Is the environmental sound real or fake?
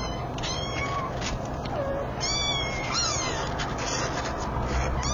real